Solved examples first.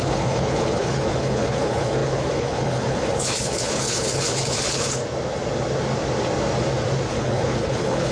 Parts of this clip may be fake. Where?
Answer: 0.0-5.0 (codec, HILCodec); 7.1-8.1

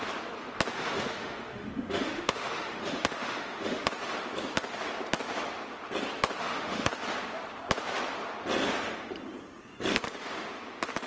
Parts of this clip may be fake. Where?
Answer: 0.7-3.9 (autoencoder, DAC-VAE); 6.4-6.9

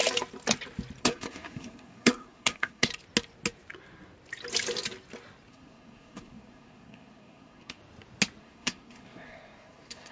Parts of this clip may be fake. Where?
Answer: 1.0-2.9 (codec, SNAC); 5.5-7.8; 8.4-10.1

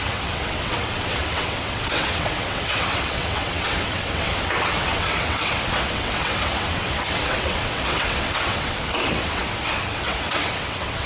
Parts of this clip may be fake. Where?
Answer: 0.0-11.1 (vocoder, WaveNeXt)

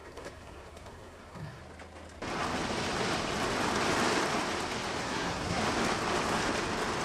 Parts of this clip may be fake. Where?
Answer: 0.0-1.6 (codec, SNAC); 5.0-5.6

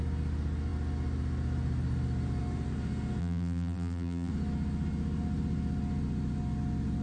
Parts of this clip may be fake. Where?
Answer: 3.2-4.3 (vocoder, BigVGAN v2)